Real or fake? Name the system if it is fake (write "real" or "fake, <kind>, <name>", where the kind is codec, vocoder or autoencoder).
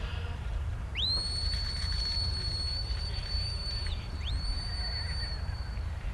fake, vocoder, BigVGAN v2